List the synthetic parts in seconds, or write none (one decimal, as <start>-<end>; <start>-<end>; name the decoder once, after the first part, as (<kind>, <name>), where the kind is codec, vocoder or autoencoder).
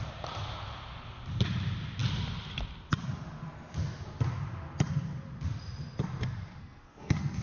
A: 6.6-7.4 (codec, SNAC)